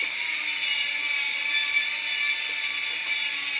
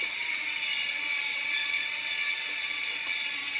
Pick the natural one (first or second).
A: first